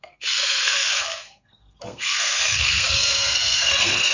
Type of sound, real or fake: fake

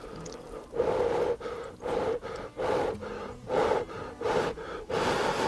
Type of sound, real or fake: real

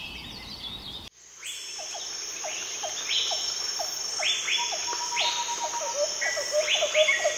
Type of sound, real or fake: real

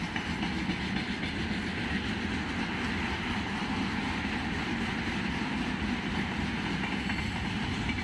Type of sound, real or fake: real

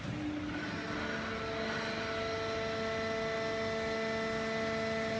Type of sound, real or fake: real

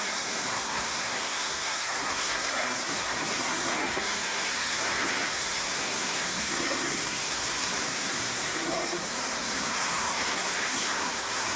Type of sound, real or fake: fake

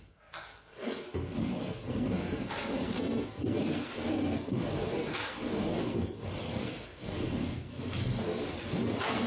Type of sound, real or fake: fake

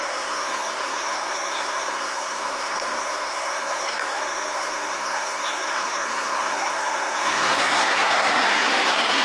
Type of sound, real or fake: fake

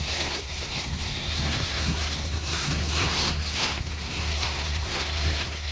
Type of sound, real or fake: fake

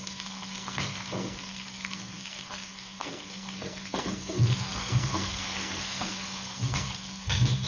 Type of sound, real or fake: fake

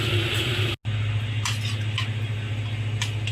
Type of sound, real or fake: real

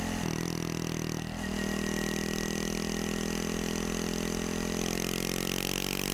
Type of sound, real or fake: real